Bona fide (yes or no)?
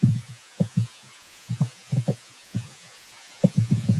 no